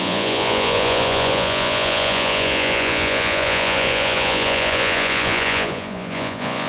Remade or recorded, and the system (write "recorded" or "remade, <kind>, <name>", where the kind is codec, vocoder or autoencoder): remade, vocoder, Vocos